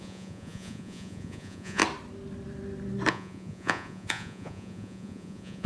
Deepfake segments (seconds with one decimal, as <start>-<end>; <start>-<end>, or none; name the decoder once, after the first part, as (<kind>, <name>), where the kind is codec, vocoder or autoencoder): 0.0-1.8 (vocoder, Vocos); 3.1-5.7